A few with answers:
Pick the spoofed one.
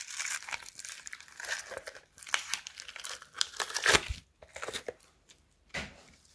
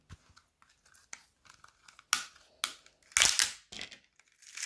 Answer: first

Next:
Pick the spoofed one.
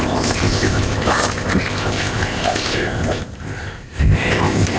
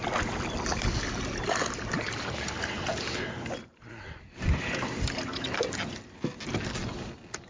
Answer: first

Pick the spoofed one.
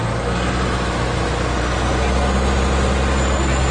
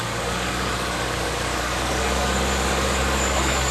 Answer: second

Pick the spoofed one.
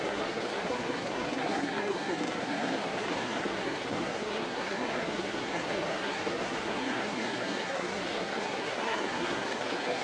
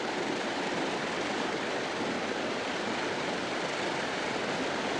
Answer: first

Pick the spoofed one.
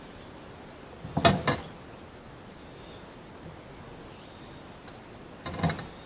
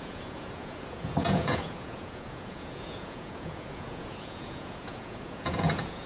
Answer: second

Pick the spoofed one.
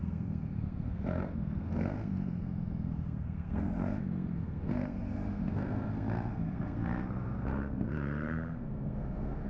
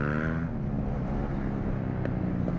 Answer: first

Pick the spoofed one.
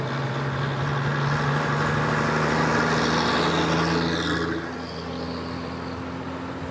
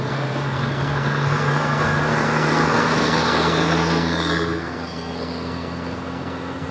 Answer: second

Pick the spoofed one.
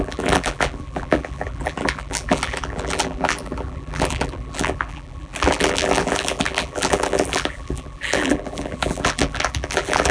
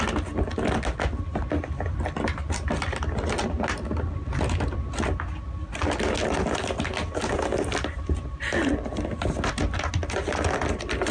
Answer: first